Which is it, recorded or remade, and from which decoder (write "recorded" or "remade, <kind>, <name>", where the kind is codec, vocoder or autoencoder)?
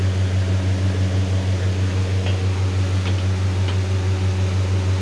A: recorded